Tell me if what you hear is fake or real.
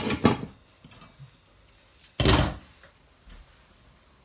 real